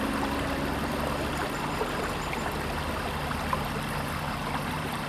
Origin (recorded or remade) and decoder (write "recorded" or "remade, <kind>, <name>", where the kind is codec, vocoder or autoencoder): recorded